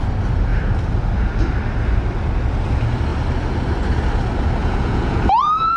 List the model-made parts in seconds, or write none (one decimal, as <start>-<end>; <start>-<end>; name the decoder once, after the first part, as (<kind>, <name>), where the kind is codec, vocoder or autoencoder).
4.6-5.8 (vocoder, Vocos)